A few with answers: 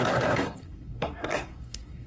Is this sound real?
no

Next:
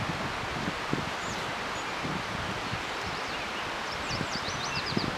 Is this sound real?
yes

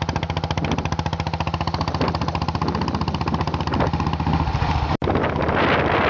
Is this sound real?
yes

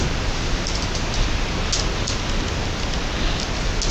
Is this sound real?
yes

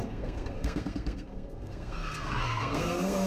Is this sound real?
no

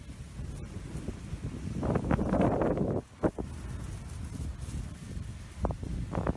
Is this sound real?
yes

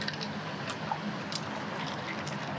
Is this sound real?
yes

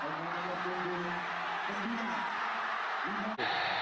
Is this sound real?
yes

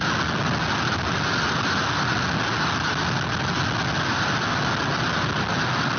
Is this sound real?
yes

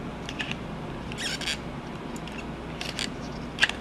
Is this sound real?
yes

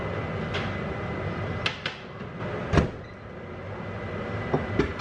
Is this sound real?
yes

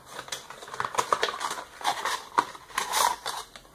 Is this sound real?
yes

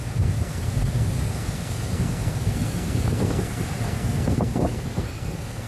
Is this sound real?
no